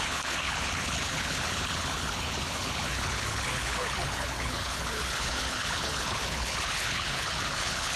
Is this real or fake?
fake